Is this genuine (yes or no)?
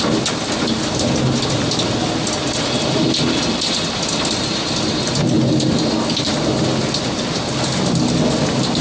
yes